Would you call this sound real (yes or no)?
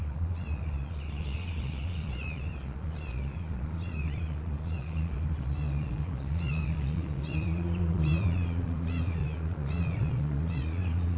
no